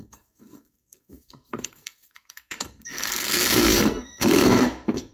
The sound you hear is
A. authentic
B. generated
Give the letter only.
B